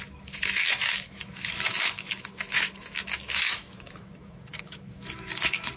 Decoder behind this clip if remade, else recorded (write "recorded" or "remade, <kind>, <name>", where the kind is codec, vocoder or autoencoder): remade, autoencoder, DAC-VAE